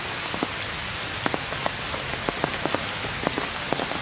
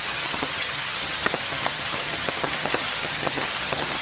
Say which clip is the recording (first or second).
first